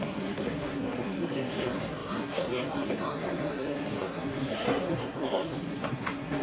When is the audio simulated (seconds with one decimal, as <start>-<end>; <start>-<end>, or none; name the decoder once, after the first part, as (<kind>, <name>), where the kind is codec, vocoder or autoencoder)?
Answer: 0.0-6.4 (codec, SNAC)